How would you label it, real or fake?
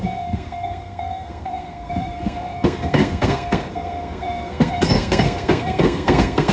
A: fake